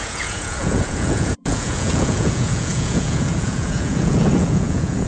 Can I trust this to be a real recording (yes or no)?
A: no